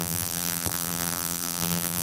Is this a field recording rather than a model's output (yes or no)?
no